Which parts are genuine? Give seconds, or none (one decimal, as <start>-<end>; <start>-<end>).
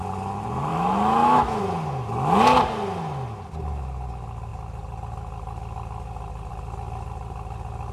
0.0-0.7; 1.6-7.9